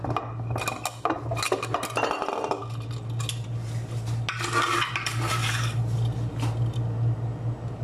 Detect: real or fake real